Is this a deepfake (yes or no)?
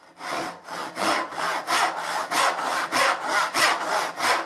no